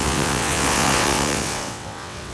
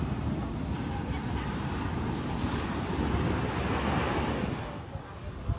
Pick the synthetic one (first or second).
first